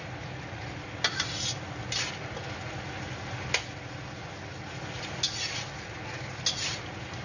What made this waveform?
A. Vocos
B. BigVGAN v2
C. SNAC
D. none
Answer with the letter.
D